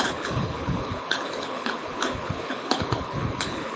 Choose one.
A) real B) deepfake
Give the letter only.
B